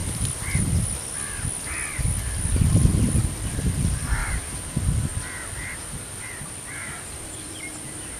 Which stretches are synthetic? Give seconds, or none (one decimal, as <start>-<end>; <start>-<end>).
none

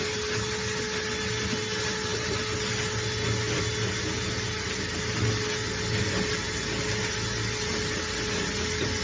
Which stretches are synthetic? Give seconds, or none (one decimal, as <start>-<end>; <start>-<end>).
none

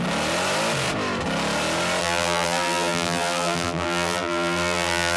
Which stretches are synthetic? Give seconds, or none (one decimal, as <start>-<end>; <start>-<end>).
2.0-5.2

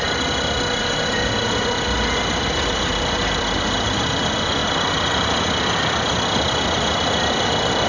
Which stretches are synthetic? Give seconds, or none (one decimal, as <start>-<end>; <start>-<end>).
4.6-5.1

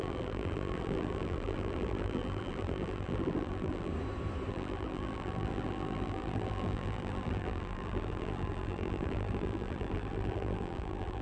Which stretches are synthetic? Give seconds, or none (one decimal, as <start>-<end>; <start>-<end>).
0.0-3.9; 4.5-11.2

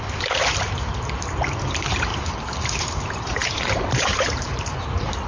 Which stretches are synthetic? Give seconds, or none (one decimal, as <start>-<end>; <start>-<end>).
3.4-4.7

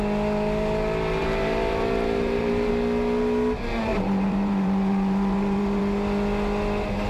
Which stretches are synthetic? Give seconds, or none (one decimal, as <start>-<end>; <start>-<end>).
1.2-2.7; 3.9-5.8

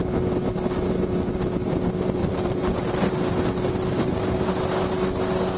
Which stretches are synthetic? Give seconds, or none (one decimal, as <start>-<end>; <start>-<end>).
2.2-3.1